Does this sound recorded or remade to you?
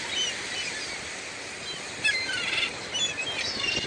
recorded